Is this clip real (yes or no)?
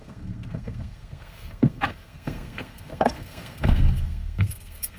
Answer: no